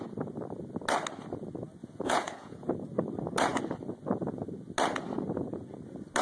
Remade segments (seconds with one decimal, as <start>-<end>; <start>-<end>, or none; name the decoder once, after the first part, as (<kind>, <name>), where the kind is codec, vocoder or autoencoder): 1.8-2.7 (vocoder, Vocos)